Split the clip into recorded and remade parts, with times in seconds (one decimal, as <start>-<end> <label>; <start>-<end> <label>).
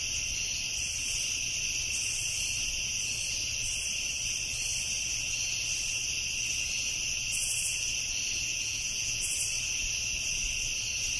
0.0-8.5 recorded; 8.5-9.2 remade; 9.2-11.2 recorded